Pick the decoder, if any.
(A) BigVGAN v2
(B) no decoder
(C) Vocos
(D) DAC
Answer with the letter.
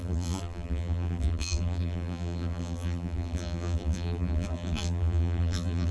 A